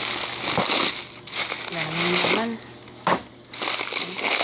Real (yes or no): yes